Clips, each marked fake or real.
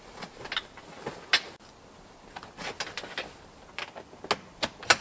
real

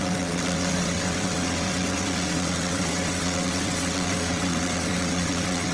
fake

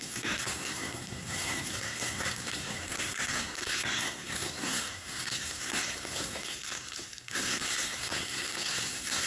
fake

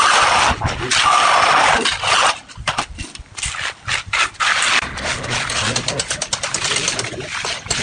real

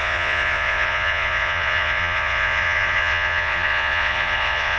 fake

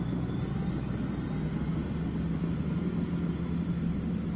real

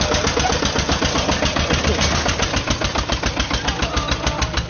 real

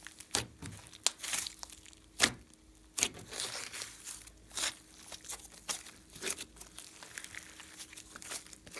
real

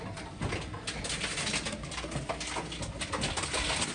real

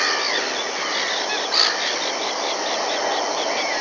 real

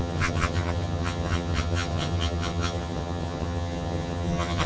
fake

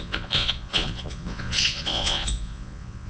fake